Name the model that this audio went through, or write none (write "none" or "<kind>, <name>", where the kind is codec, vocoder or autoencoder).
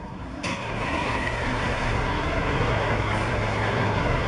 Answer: codec, SNAC